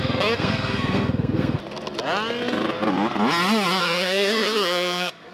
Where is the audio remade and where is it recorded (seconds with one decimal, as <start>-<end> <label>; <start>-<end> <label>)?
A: 0.0-1.6 remade; 1.6-3.8 recorded; 3.8-5.3 remade